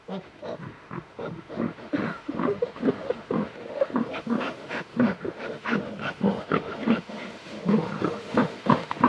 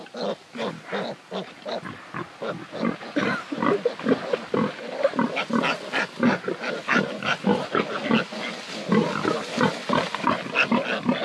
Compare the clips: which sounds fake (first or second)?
first